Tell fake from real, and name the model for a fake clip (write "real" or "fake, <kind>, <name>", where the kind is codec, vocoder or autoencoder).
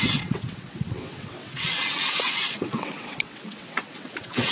fake, vocoder, WaveNeXt